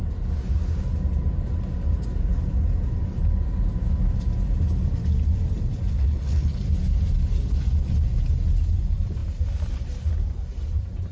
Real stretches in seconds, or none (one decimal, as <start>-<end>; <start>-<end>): 0.0-5.9; 6.6-11.1